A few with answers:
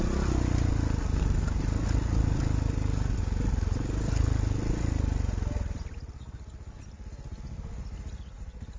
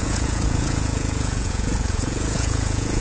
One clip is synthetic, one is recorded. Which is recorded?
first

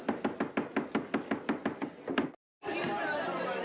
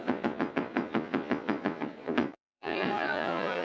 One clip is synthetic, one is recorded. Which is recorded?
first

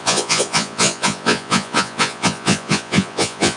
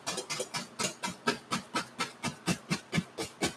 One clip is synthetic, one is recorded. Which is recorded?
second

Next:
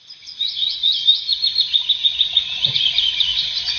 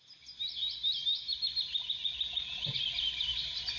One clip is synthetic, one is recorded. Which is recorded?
second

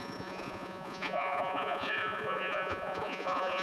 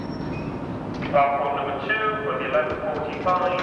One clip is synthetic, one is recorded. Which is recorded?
second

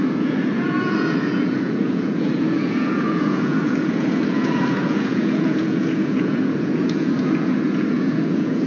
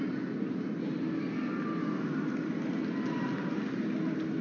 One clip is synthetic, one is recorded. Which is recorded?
second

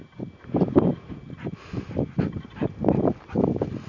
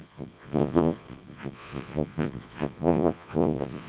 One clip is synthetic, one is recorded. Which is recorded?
first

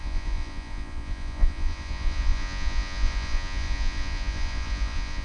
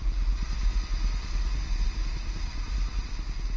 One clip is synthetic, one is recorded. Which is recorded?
second